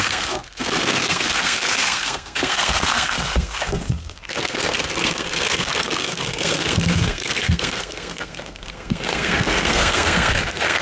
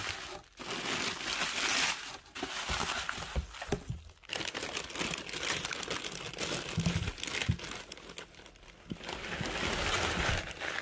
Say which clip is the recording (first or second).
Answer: second